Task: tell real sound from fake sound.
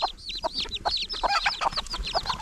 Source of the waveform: fake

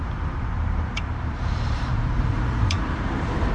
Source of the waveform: fake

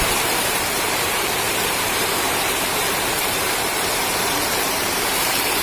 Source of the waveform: fake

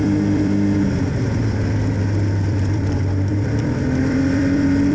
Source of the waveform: fake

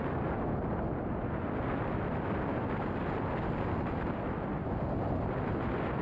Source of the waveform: real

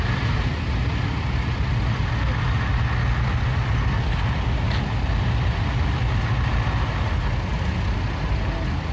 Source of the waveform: real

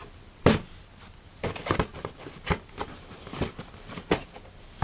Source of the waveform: real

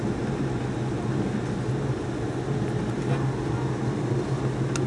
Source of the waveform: real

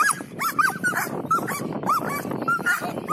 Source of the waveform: real